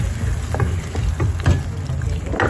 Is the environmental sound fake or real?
real